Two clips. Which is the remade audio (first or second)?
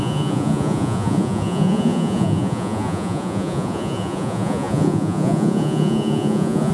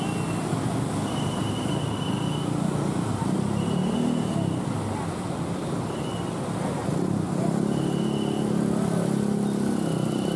first